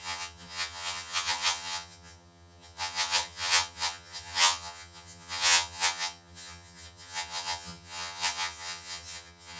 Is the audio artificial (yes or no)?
yes